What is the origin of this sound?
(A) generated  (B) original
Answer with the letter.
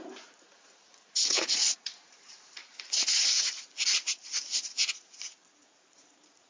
A